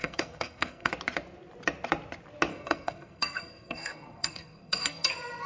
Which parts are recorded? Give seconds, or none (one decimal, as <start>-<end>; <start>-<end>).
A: 0.9-2.5; 5.1-5.5